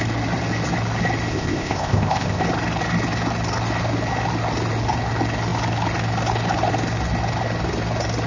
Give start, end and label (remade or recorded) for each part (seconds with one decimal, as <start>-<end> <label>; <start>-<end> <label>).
0.0-1.3 recorded; 1.3-2.4 remade; 2.4-8.3 recorded